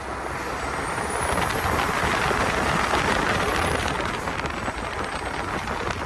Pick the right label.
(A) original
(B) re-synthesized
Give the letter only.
A